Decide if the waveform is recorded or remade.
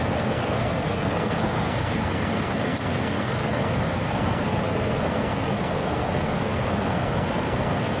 remade